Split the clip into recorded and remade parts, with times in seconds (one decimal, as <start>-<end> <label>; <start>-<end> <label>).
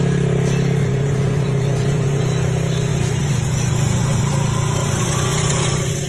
0.0-0.8 recorded; 0.8-2.2 remade; 2.2-2.9 recorded; 2.9-4.2 remade; 4.2-4.8 recorded; 4.8-6.1 remade